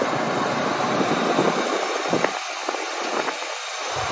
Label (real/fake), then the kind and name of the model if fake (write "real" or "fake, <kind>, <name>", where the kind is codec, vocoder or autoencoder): real